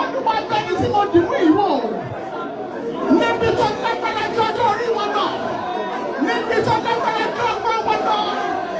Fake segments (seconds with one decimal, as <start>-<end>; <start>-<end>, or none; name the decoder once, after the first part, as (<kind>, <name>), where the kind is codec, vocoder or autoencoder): 0.0-1.1 (codec, DAC); 2.2-5.7; 6.8-8.8